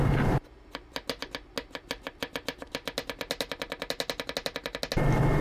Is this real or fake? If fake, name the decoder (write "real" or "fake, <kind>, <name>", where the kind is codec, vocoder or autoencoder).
real